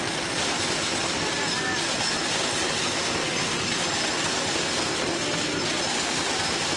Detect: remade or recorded recorded